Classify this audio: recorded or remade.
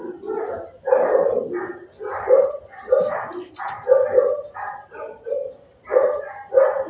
recorded